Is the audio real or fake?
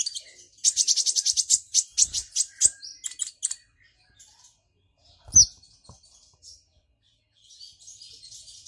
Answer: real